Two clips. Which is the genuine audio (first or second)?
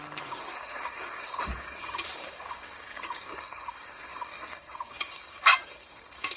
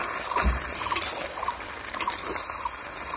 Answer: second